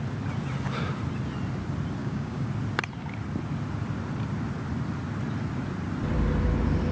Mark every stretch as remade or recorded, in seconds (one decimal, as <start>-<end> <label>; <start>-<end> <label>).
0.0-2.0 recorded; 2.0-2.5 remade; 2.5-6.9 recorded